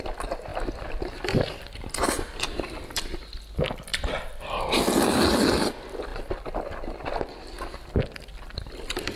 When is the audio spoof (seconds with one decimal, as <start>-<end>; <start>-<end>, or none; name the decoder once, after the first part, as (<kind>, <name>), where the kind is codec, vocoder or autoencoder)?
3.9-4.8 (vocoder, BigVGAN v2)